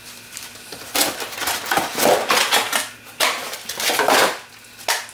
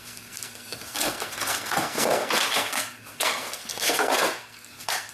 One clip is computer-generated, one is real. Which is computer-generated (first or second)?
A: second